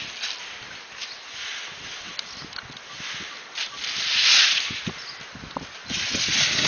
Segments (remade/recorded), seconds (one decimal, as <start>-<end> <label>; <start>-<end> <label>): 0.0-5.8 recorded; 5.8-6.7 remade